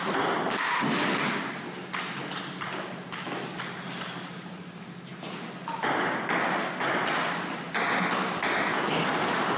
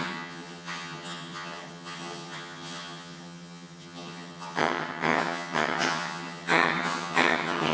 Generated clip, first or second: second